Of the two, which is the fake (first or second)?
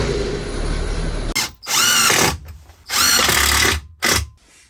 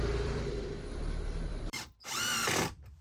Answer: second